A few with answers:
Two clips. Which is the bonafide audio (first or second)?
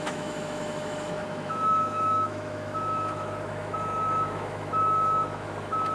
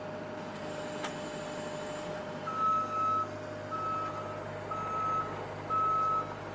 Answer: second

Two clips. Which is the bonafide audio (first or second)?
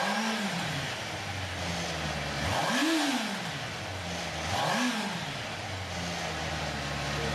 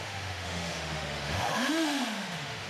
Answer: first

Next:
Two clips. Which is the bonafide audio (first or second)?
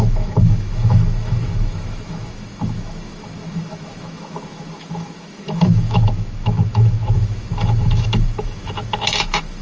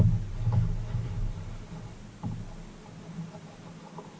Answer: second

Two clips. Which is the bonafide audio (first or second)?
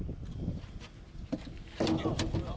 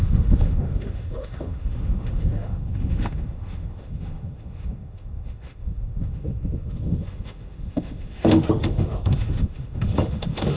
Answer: first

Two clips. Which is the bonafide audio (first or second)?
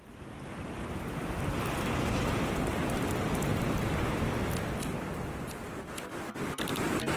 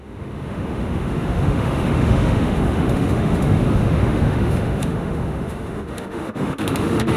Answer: first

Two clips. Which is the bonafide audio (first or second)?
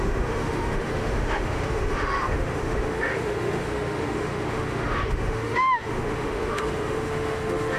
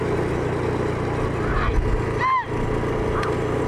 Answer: second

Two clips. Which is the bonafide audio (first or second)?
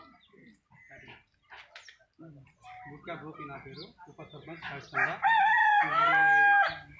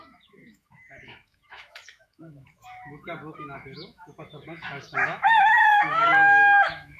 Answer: first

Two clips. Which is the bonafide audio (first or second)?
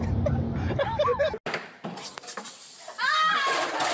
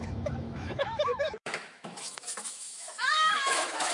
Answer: first